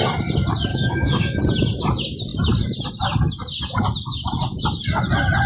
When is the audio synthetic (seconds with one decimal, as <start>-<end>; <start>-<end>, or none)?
0.7-1.4